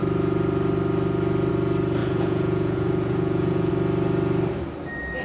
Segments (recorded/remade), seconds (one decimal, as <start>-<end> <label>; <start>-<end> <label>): 0.0-2.0 recorded; 2.0-3.7 remade; 3.7-5.2 recorded